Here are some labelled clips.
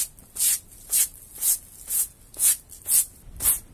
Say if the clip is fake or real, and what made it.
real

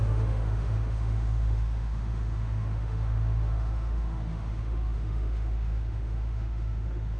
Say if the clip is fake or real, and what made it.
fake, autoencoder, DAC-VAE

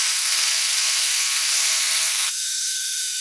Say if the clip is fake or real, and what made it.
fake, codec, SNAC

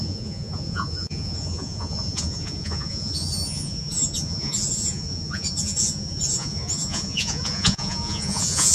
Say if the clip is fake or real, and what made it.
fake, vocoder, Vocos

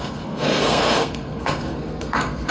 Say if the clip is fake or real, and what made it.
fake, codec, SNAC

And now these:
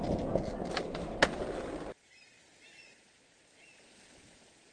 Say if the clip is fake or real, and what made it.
real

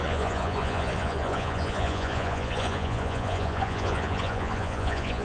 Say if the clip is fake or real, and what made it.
fake, vocoder, Vocos